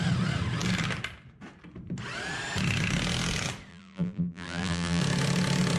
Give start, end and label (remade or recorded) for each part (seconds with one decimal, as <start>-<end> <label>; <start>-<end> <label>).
0.0-3.7 recorded; 3.7-5.0 remade; 5.0-5.8 recorded